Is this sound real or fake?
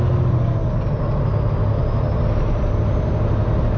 real